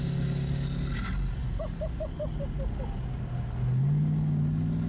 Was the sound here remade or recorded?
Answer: recorded